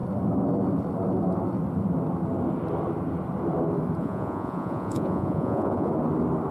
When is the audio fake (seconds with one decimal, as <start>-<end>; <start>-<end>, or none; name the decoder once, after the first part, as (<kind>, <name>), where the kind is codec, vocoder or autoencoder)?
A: 4.0-5.9 (vocoder, Vocos)